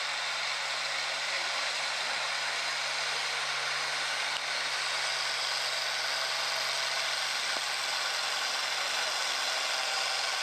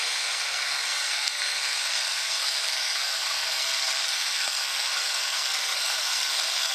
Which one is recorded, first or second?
first